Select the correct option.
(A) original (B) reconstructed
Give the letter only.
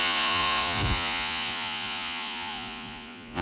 B